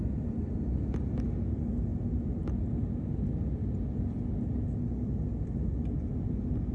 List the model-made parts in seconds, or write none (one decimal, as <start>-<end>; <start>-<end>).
none